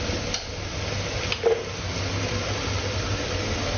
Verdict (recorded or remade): recorded